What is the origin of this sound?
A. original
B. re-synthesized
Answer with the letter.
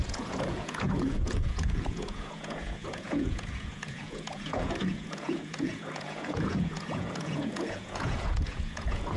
B